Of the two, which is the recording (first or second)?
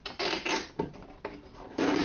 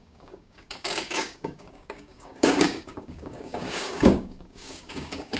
first